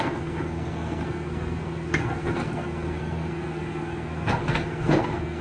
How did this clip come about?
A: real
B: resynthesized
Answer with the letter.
B